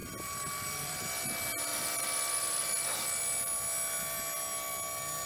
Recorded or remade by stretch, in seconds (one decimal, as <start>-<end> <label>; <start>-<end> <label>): 0.0-0.9 remade; 0.9-1.7 recorded; 1.7-3.2 remade; 3.2-5.3 recorded